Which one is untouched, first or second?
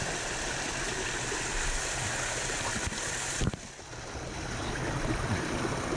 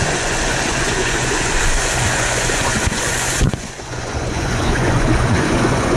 first